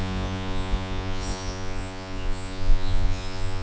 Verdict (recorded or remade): remade